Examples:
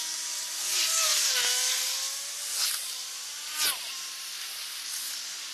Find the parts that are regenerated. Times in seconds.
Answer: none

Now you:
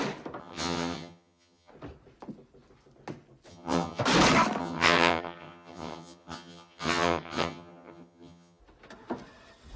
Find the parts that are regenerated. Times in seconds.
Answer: 0.4-1.7 (vocoder, HiFi-GAN); 3.5-4.0; 4.6-8.6

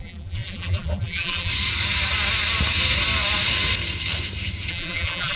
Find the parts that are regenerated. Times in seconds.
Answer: 0.0-1.5 (vocoder, BigVGAN v2); 4.7-5.4

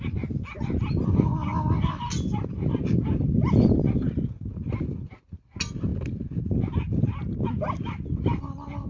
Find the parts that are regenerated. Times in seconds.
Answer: none